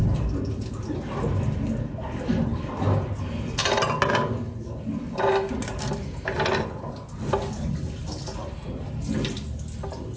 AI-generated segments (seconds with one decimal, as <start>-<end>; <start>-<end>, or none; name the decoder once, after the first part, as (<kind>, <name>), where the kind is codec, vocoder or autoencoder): none